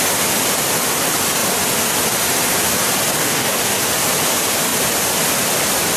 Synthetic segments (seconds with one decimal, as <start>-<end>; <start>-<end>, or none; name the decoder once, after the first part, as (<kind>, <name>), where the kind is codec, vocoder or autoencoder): 3.2-3.8 (codec, DAC)